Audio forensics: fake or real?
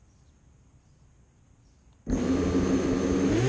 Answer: real